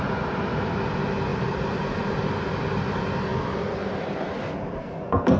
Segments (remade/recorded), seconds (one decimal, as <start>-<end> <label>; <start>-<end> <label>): 0.0-4.8 recorded; 4.8-5.4 remade